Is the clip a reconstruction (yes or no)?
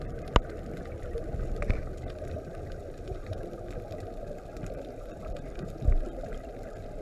no